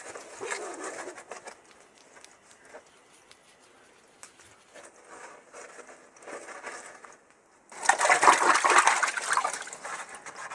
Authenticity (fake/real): real